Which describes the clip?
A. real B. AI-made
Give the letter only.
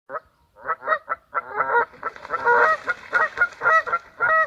A